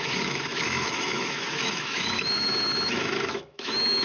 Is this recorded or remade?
remade